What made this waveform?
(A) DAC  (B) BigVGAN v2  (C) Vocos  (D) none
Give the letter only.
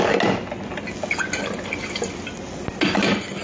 D